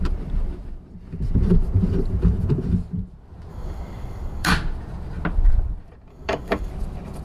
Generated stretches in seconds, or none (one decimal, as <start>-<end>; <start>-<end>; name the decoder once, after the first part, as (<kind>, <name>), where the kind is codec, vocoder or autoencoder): 3.5-4.5 (codec, DAC); 6.1-6.7